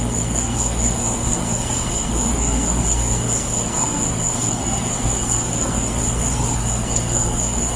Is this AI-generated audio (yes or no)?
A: yes